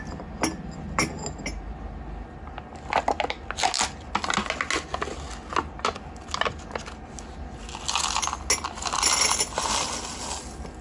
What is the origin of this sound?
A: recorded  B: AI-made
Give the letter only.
A